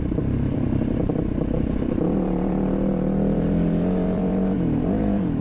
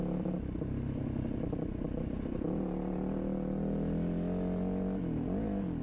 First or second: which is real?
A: second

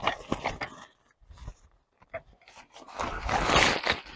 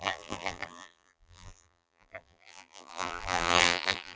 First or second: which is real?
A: first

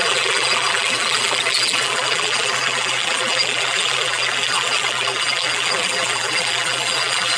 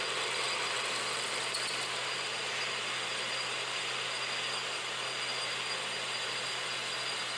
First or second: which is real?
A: second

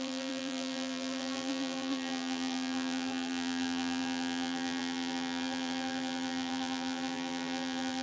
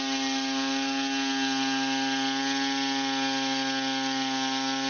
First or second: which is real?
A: second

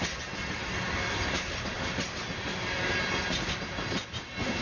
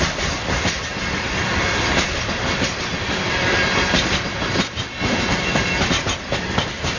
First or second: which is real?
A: first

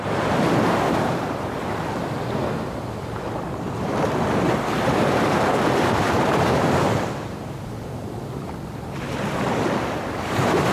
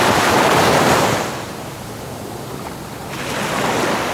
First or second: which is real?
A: second